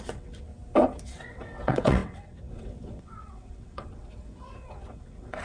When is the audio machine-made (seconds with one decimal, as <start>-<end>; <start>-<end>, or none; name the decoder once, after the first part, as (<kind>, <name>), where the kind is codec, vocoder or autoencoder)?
0.0-0.5 (vocoder, WaveNeXt); 1.0-5.4